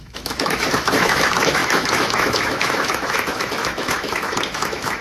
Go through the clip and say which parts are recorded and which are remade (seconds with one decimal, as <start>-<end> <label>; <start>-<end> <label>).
0.0-5.0 remade